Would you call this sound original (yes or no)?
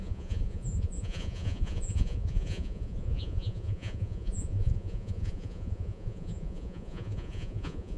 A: no